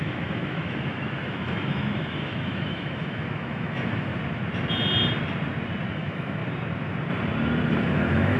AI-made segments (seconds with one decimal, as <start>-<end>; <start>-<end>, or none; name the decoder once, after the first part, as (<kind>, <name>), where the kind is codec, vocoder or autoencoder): 0.0-4.1 (autoencoder, DAC-VAE); 5.9-6.4; 7.9-8.4